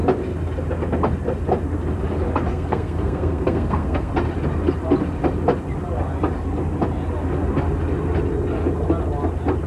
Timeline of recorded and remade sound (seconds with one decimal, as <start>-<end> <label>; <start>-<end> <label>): 0.0-2.5 recorded; 2.5-4.1 remade; 4.1-9.7 recorded